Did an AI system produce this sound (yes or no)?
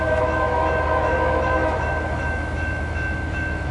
yes